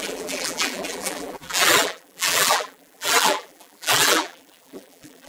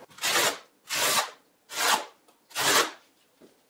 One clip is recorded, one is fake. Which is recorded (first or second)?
second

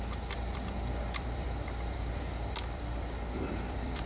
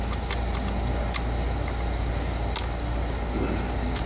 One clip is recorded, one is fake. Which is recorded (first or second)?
second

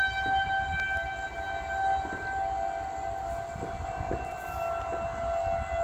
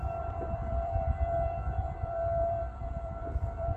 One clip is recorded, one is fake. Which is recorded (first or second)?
first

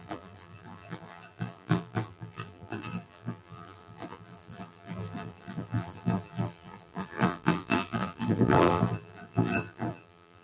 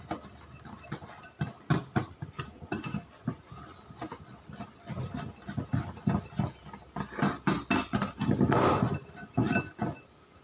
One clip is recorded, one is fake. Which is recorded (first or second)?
second